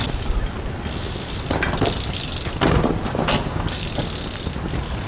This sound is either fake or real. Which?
real